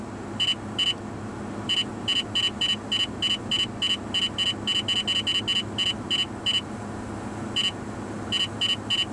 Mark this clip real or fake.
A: real